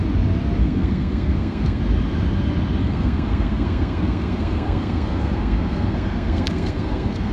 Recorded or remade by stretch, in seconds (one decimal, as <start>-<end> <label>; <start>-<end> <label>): 0.0-0.6 recorded; 0.6-1.8 remade; 1.8-2.8 recorded; 2.8-7.3 remade